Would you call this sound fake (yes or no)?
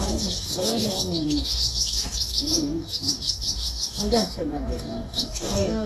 yes